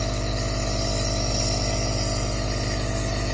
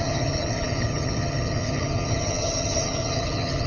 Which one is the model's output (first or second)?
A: second